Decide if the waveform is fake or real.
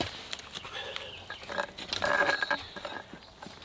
real